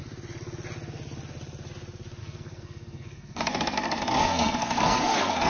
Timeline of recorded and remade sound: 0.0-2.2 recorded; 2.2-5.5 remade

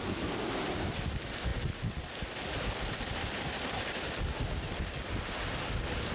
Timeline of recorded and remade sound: 0.0-6.1 recorded